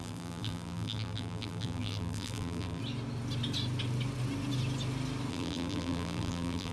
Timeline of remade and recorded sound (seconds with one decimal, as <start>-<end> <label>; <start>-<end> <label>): 0.0-2.8 remade; 2.8-5.3 recorded; 5.3-6.7 remade